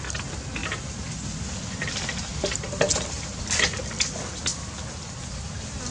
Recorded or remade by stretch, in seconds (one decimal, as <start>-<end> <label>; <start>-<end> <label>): 0.0-0.6 recorded; 0.6-1.5 remade; 1.5-2.3 recorded; 2.3-3.7 remade; 3.7-5.9 recorded